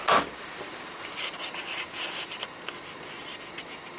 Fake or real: real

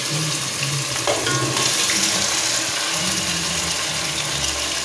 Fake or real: real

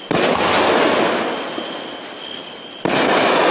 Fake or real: real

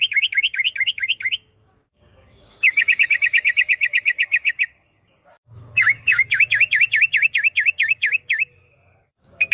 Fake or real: fake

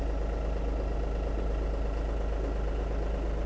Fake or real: real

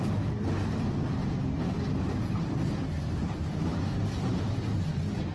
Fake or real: real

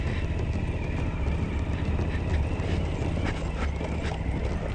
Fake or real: real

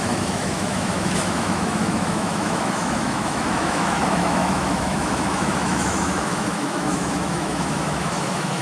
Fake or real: fake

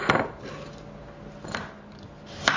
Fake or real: real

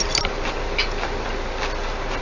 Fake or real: real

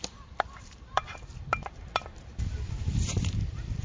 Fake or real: fake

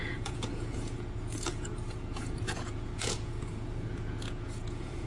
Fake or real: fake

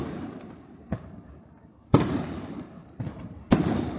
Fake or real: fake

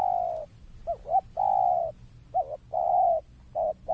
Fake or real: real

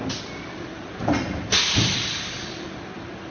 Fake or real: real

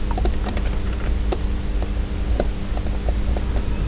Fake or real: real